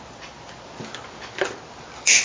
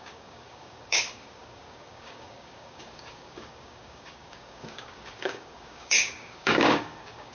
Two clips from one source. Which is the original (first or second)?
first